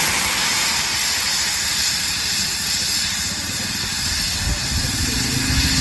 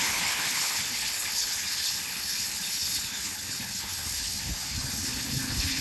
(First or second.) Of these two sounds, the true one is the first